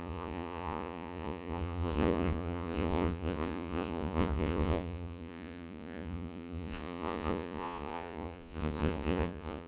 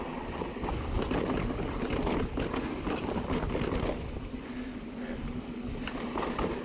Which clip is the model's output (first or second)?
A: first